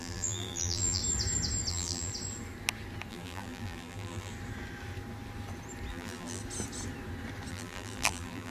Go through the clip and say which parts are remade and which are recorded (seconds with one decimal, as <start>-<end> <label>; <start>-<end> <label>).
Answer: 0.0-1.0 remade; 1.0-1.7 recorded; 1.7-2.1 remade; 2.1-3.1 recorded; 3.1-4.3 remade; 4.3-5.9 recorded; 5.9-6.4 remade; 6.4-7.5 recorded; 7.5-8.5 remade